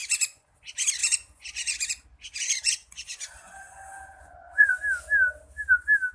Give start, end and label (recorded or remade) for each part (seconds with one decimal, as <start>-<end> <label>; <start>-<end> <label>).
0.0-0.6 remade; 0.6-1.0 recorded; 1.0-4.7 remade; 4.7-6.1 recorded